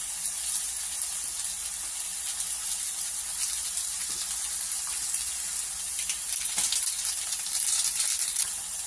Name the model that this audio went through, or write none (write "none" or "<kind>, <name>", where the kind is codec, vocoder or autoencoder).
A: none